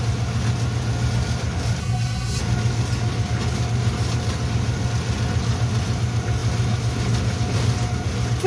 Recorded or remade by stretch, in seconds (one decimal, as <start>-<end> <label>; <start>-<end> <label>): 0.0-1.8 recorded; 1.8-2.4 remade; 2.4-8.5 recorded